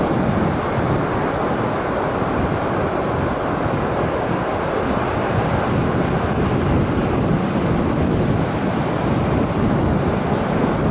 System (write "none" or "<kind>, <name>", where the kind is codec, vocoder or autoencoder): none